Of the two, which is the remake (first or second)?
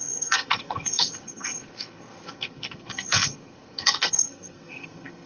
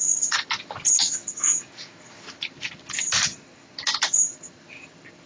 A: first